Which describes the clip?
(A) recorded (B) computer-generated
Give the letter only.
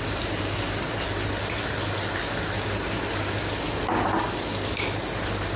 A